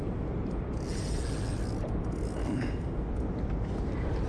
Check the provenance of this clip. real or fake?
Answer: real